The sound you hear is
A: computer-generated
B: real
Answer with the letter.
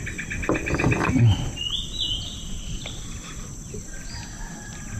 B